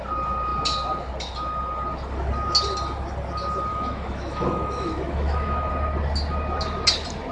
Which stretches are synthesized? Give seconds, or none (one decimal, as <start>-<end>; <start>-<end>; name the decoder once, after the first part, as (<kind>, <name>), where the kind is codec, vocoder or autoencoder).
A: 3.7-5.7 (autoencoder, DAC-VAE)